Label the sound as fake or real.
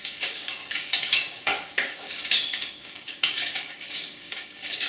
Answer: fake